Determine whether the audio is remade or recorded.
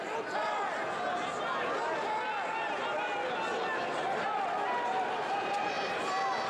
recorded